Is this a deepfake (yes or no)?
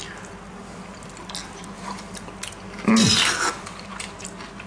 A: no